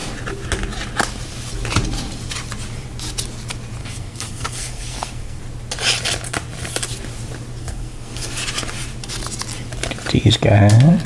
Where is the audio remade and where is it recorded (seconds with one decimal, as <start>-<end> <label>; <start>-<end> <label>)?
0.0-3.8 recorded; 3.8-5.4 remade; 5.4-7.6 recorded; 7.6-8.3 remade; 8.3-11.1 recorded